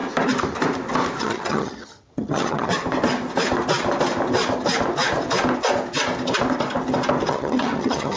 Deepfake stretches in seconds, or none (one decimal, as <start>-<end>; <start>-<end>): 1.2-2.7; 7.3-8.2